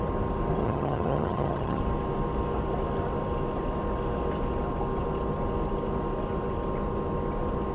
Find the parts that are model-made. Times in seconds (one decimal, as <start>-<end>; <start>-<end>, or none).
0.6-1.8